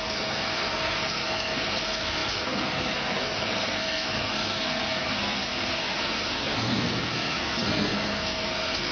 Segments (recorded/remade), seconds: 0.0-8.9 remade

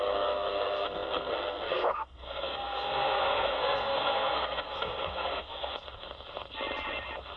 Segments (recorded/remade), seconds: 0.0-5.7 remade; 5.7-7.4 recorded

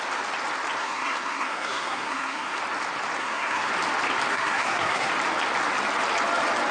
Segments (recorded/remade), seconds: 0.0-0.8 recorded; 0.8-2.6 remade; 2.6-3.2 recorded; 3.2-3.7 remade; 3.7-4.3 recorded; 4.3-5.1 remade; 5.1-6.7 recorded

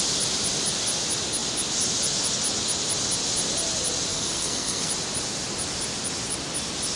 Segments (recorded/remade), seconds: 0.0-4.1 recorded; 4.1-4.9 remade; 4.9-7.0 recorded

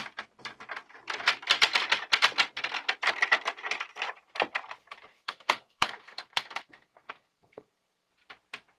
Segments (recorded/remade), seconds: 0.0-5.1 recorded; 5.1-8.1 remade; 8.1-8.8 recorded

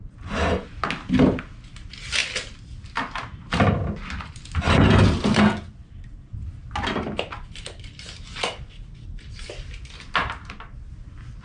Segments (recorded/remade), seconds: 0.0-11.4 recorded